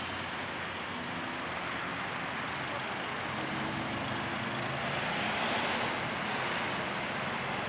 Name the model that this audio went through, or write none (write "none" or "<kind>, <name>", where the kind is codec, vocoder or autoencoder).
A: none